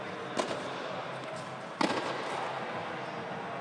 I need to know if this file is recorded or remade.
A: recorded